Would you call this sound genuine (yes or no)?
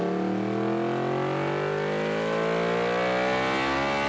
yes